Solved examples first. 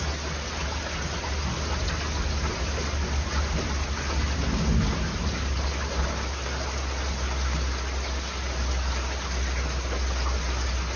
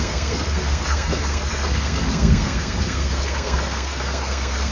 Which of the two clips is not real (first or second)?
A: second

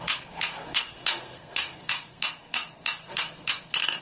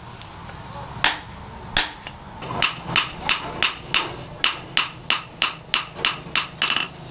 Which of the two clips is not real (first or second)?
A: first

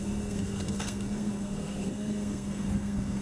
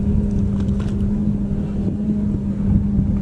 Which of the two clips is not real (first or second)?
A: first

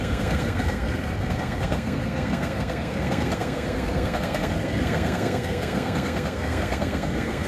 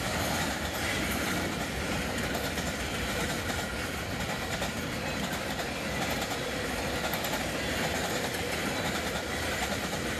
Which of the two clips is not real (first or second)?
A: first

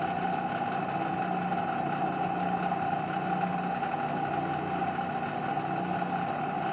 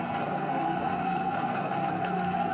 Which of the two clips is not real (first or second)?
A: second